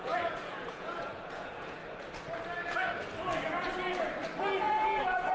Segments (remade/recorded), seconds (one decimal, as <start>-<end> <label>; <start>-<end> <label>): 0.0-1.8 remade; 1.8-4.6 recorded; 4.6-5.3 remade